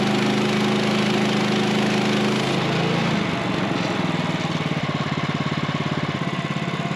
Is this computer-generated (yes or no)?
no